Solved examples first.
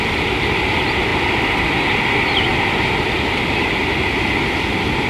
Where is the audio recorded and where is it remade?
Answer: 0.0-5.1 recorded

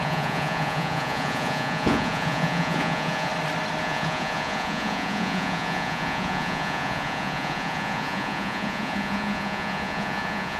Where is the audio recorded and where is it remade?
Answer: 0.0-3.3 remade; 3.3-3.8 recorded; 3.8-10.6 remade

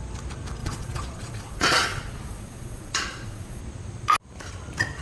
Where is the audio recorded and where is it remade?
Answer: 0.0-0.6 recorded; 0.6-3.6 remade; 3.6-5.0 recorded